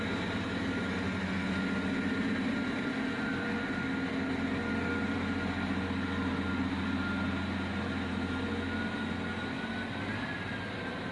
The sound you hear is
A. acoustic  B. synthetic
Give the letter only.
A